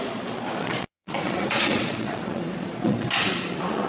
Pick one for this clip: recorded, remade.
remade